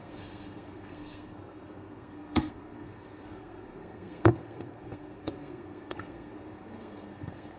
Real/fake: fake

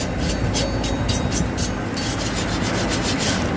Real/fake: real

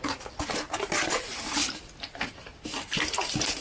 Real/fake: real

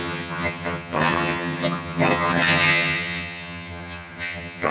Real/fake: fake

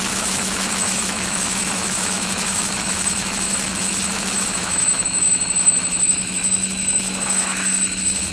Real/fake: fake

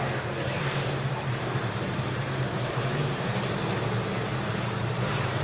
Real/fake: fake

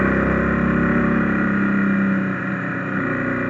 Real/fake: real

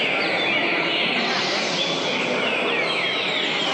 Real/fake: real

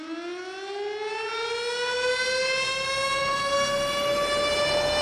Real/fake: real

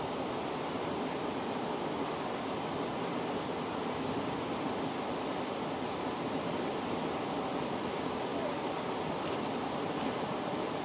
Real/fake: real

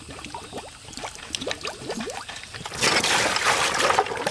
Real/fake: real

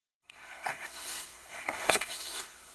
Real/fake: fake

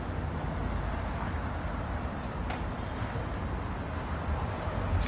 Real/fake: real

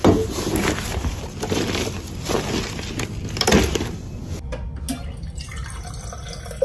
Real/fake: real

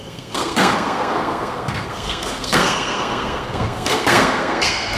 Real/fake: fake